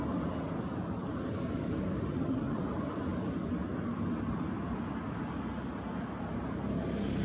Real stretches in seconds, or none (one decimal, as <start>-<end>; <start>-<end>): 0.0-2.1; 2.6-7.2